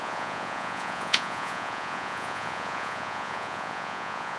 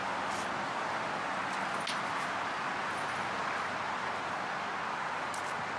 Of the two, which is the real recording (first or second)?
second